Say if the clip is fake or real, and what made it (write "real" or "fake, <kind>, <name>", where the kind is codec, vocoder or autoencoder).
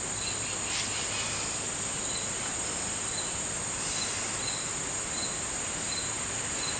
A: real